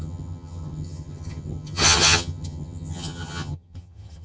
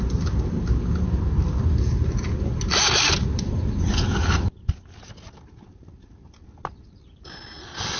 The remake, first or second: first